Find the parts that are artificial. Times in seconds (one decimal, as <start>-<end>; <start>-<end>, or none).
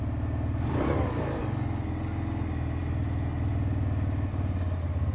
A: none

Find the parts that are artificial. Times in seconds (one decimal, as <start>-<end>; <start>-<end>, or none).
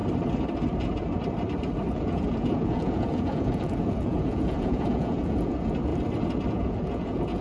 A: 1.9-5.9; 6.5-7.4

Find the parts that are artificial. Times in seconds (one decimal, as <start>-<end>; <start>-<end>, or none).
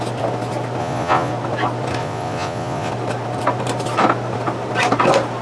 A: 0.8-1.3; 2.0-2.9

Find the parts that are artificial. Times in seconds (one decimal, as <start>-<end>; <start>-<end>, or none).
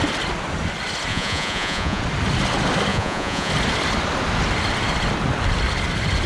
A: 1.1-2.0; 2.9-3.5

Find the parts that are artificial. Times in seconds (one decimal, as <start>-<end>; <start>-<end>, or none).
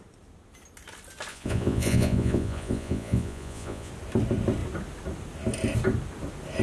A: 1.3-3.9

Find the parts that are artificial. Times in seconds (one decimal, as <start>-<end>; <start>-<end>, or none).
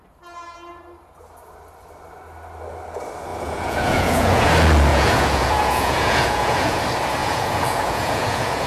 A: 3.3-4.5; 4.9-6.8; 7.2-8.7